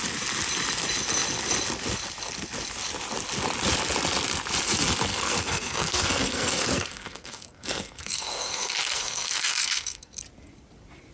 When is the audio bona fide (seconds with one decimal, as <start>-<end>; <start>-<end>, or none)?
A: 0.0-5.1; 10.2-11.1